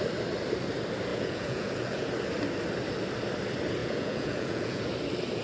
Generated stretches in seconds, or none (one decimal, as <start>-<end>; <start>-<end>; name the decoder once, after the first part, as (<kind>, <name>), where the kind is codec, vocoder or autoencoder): 1.1-2.1 (vocoder, Vocos); 3.8-4.8